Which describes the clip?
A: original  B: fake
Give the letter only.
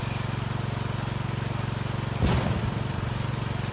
A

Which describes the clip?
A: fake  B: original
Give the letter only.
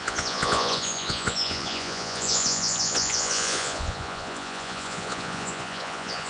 A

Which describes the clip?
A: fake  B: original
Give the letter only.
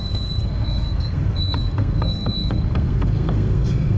A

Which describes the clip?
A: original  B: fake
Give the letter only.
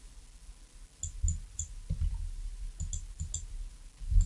A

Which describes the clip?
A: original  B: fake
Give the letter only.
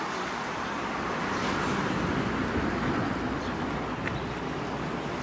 A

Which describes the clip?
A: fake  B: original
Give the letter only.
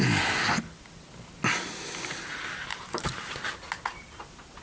B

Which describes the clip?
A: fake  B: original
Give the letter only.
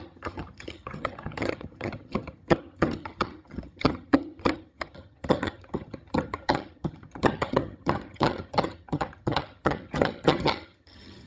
A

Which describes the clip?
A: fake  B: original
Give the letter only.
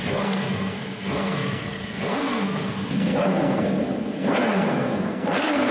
A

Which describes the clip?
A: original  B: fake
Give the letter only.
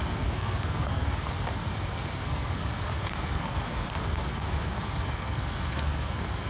B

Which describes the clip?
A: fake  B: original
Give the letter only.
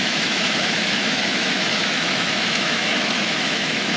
A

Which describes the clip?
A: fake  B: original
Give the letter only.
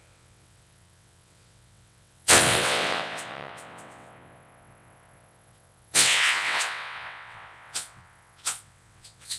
A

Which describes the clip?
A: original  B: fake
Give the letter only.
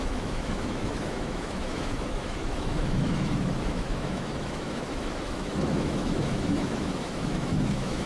B